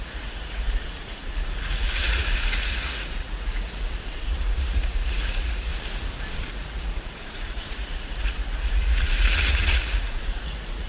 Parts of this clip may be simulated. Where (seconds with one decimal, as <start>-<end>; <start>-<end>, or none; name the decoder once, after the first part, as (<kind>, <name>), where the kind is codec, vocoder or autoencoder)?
0.0-5.7 (vocoder, Vocos); 6.5-10.9